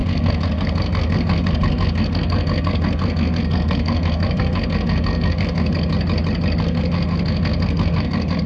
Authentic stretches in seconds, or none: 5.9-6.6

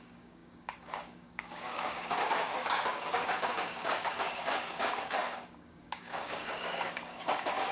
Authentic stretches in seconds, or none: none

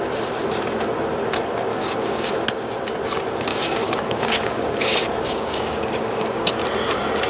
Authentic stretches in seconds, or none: 0.0-1.7; 2.3-3.5; 6.5-7.3

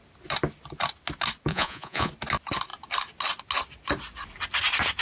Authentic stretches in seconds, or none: 0.0-1.5; 2.1-5.0

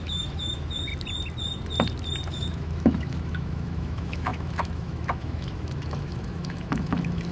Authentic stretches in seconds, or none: 0.9-2.3